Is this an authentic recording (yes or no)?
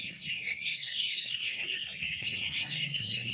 no